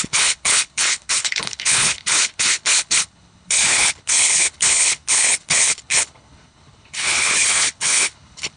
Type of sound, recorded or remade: remade